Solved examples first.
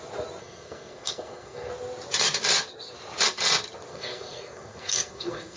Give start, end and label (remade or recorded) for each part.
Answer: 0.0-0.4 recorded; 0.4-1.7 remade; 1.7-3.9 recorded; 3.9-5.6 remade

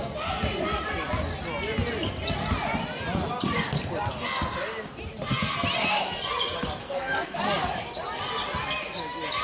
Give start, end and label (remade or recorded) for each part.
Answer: 0.0-6.8 recorded; 6.8-7.4 remade; 7.4-9.4 recorded

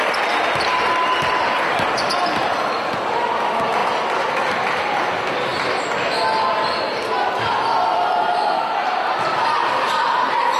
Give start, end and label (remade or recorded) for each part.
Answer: 0.0-10.6 recorded

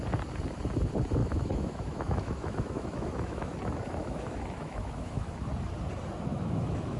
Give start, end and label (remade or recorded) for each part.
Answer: 0.0-1.2 recorded; 1.2-5.3 remade; 5.3-6.3 recorded; 6.3-7.0 remade

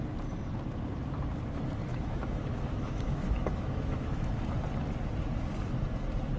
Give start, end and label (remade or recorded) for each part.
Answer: 0.0-1.9 recorded; 1.9-4.3 remade; 4.3-6.4 recorded

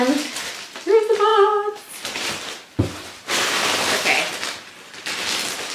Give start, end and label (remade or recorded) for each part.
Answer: 0.0-5.7 recorded